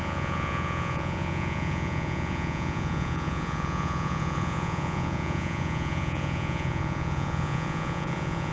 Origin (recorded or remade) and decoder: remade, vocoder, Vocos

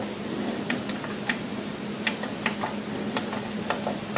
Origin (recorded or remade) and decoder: recorded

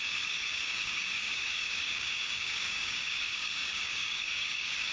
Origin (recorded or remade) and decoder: remade, codec, DAC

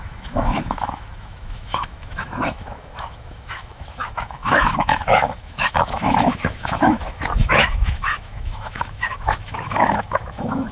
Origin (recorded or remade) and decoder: remade, autoencoder, DAC-VAE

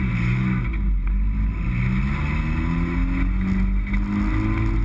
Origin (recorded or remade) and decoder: recorded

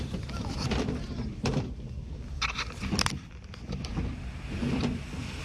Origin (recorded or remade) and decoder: remade, vocoder, BigVGAN v2